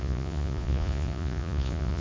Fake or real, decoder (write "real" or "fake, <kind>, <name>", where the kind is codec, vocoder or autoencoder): fake, vocoder, Vocos